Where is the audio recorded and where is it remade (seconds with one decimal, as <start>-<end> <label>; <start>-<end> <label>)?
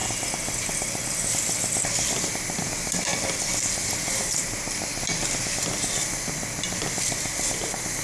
0.0-8.0 recorded